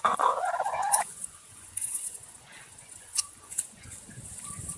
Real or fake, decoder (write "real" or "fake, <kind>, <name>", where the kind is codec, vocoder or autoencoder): fake, vocoder, Vocos